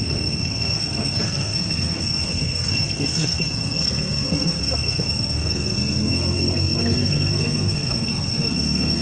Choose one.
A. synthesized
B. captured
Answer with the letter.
A